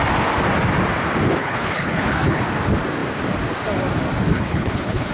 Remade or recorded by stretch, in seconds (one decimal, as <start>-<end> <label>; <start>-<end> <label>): 0.0-1.4 recorded; 1.4-2.4 remade; 2.4-4.3 recorded; 4.3-5.1 remade